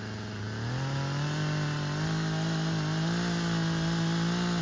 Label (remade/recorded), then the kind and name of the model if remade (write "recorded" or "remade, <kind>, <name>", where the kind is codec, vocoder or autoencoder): recorded